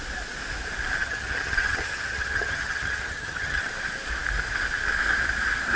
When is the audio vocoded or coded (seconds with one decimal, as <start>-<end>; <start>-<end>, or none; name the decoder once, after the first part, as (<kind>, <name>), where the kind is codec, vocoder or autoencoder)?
1.0-3.7 (vocoder, HiFi-GAN)